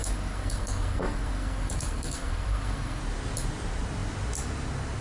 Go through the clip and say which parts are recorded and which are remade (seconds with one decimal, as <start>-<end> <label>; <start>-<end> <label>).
0.0-3.0 remade; 3.0-5.0 recorded